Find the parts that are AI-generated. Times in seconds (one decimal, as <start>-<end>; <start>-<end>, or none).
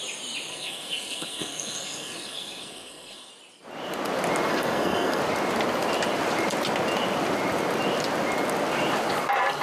0.5-3.3; 4.5-5.2